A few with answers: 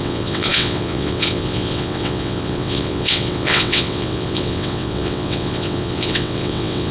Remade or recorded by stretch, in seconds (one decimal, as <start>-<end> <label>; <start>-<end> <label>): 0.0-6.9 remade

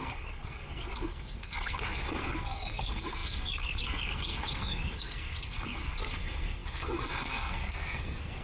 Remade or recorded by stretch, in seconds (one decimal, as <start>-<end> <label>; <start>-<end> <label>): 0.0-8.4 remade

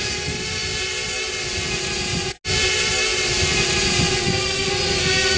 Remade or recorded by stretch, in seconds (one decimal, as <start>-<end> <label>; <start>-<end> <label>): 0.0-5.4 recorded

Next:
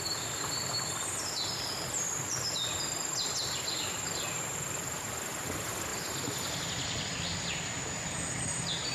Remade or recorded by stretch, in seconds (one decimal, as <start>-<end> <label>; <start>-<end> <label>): 0.0-8.9 recorded

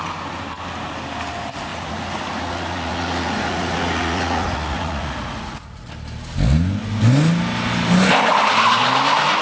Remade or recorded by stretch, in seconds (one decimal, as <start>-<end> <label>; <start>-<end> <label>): 0.0-1.7 recorded; 1.7-5.9 remade; 5.9-9.4 recorded

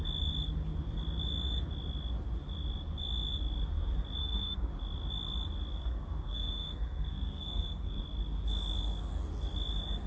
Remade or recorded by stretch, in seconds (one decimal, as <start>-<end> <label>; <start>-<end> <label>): 0.0-4.2 recorded; 4.2-4.7 remade; 4.7-5.7 recorded; 5.7-8.0 remade; 8.0-10.1 recorded